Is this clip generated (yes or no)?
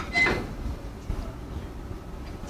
no